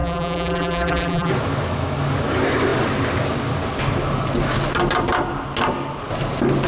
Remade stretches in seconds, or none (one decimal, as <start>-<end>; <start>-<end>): 0.0-1.3